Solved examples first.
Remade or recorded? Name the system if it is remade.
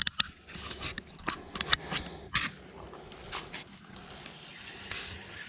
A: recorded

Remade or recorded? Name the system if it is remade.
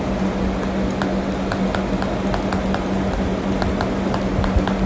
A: recorded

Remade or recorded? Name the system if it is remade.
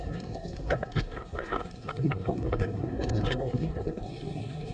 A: remade, codec, SNAC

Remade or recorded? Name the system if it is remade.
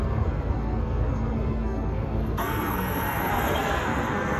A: remade, codec, SNAC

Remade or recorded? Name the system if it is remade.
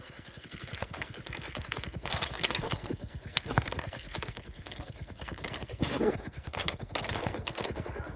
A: remade, codec, SNAC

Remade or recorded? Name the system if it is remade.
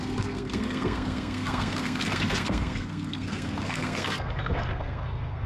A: remade, codec, SNAC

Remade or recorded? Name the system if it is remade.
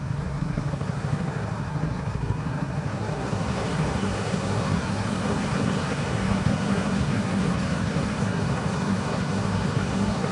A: remade, codec, SNAC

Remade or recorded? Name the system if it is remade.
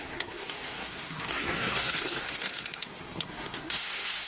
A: remade, codec, SNAC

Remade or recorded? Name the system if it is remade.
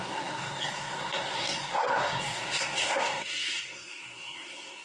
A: remade, codec, SNAC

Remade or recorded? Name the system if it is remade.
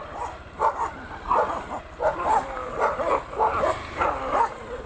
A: recorded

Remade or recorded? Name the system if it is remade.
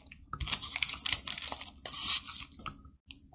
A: recorded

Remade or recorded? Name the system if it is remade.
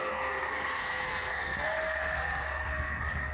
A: remade, codec, SNAC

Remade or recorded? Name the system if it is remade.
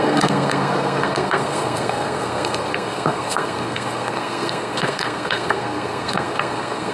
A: remade, codec, SNAC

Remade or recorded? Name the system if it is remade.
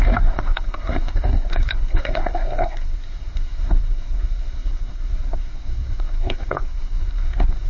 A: remade, codec, SNAC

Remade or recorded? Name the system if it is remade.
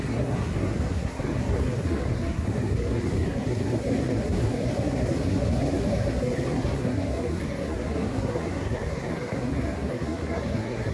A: remade, codec, SNAC